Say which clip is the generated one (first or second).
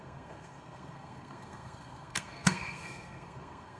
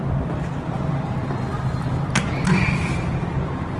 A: first